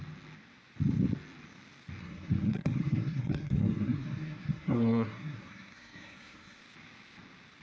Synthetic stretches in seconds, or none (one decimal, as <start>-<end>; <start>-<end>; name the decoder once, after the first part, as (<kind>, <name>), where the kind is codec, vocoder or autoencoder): 2.0-6.6 (codec, SNAC)